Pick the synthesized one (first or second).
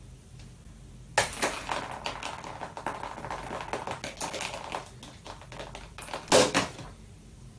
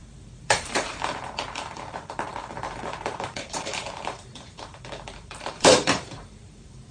second